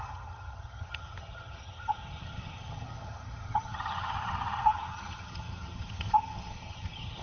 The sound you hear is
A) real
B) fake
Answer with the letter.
B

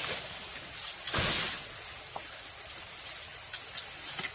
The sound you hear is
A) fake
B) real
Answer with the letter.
B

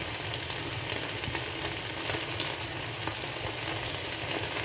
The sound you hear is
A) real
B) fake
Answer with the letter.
A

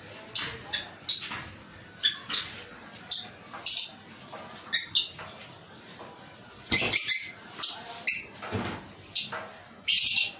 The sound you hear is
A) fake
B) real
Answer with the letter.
B